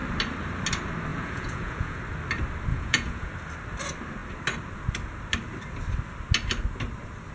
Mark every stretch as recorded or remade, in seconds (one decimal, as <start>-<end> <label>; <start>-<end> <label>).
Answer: 0.0-1.1 recorded; 1.1-2.0 remade; 2.0-2.7 recorded; 2.7-3.3 remade; 3.3-7.3 recorded